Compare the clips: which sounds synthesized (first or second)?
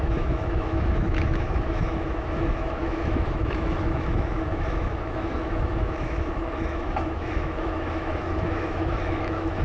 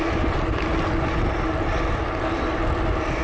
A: first